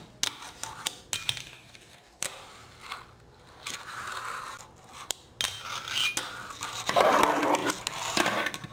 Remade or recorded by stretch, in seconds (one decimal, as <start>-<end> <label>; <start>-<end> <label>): 0.0-1.4 recorded; 1.4-2.2 remade; 2.2-8.7 recorded